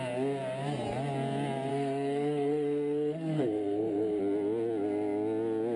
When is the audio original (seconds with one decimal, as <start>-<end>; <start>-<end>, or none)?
0.0-1.7; 4.2-5.8